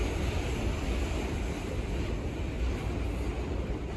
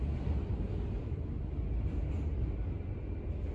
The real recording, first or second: second